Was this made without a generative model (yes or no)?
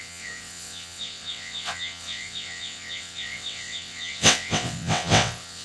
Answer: no